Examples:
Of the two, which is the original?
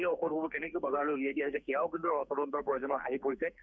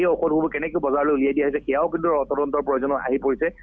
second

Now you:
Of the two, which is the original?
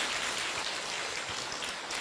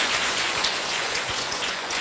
first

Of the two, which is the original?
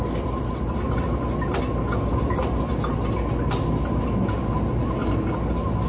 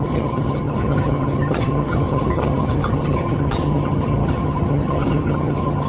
first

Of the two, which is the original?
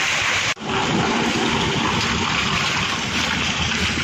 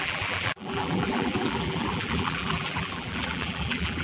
first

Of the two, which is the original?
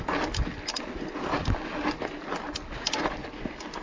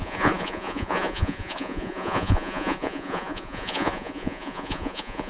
first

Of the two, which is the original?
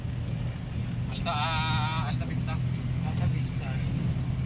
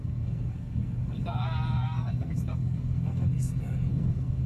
first